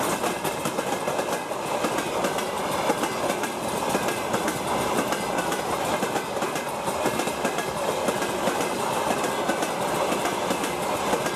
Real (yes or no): yes